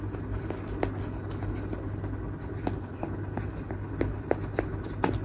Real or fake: real